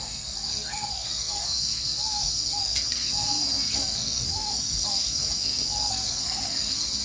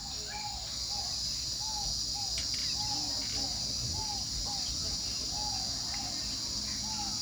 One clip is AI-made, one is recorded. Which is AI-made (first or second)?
first